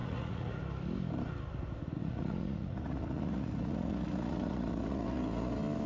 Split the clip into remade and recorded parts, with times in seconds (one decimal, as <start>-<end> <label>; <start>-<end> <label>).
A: 0.0-0.6 remade; 0.6-2.0 recorded; 2.0-5.5 remade; 5.5-5.9 recorded